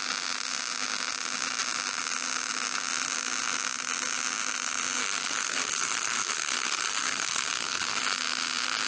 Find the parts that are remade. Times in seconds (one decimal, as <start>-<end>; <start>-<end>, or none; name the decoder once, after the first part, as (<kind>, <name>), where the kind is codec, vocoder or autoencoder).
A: 5.0-8.0 (codec, SNAC)